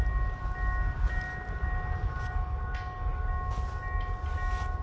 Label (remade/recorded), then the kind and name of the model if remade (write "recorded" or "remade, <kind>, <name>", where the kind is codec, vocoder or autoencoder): recorded